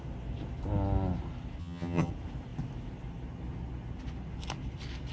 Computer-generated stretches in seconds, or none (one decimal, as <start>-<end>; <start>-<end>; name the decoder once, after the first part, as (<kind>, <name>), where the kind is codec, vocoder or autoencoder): 1.6-2.1 (vocoder, HiFi-GAN)